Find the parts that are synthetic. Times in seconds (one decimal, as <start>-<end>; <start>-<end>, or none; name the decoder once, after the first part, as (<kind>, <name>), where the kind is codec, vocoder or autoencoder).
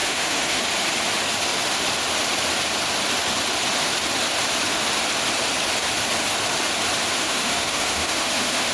0.0-0.6 (autoencoder, DAC-VAE); 7.2-8.7